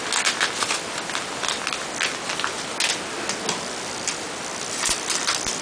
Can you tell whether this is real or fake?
real